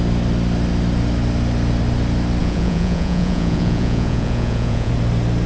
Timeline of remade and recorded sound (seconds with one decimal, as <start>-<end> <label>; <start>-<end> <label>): 0.0-2.4 recorded; 2.4-4.9 remade; 4.9-5.5 recorded

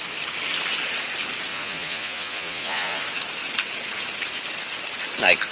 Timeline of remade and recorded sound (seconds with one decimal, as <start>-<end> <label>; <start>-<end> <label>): 0.0-1.5 recorded; 1.5-3.0 remade; 3.0-5.5 recorded

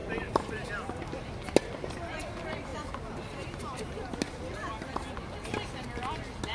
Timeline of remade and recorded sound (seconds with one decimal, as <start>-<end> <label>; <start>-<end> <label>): 0.0-0.7 remade; 0.7-2.7 recorded; 2.7-4.2 remade; 4.2-6.5 recorded

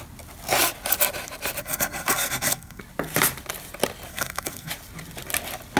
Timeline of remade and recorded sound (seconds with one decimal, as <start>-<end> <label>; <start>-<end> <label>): 0.0-1.6 recorded; 1.6-2.8 remade; 2.8-4.1 recorded; 4.1-4.7 remade; 4.7-5.8 recorded

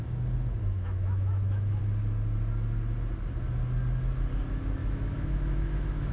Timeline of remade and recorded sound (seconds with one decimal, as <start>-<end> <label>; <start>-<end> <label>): 0.0-0.6 recorded; 0.6-1.8 remade; 1.8-4.8 recorded; 4.8-6.1 remade

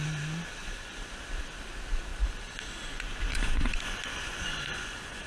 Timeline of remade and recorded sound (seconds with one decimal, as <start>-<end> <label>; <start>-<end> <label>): 0.0-0.6 recorded; 0.6-1.1 remade; 1.1-2.1 recorded; 2.1-5.3 remade

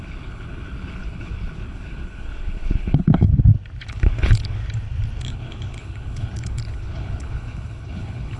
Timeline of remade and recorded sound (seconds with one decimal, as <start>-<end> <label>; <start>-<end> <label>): 0.0-3.3 remade; 3.3-3.9 recorded; 3.9-4.6 remade; 4.6-5.2 recorded; 5.2-8.4 remade

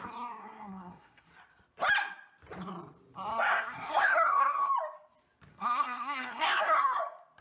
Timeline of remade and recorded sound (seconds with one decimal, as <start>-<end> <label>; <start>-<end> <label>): 0.0-0.4 recorded; 0.4-1.3 remade; 1.3-3.5 recorded; 3.5-4.7 remade; 4.7-5.5 recorded; 5.5-7.0 remade; 7.0-7.4 recorded